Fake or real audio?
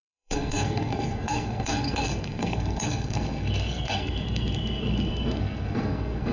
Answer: fake